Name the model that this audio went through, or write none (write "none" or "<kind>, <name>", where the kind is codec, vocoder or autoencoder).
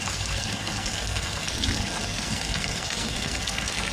codec, SNAC